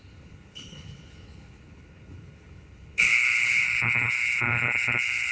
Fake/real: fake